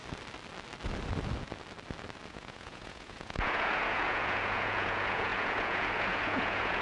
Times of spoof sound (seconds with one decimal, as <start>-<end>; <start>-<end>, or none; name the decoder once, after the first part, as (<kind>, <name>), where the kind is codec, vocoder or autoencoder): 2.3-6.8 (vocoder, Vocos)